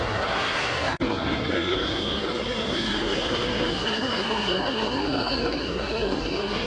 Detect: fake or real fake